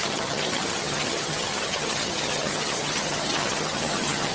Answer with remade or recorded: remade